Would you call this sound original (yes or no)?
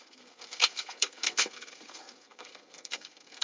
no